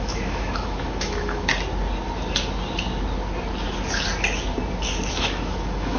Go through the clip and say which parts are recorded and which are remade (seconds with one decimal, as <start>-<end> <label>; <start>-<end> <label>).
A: 0.0-1.5 remade; 1.5-5.1 recorded; 5.1-6.0 remade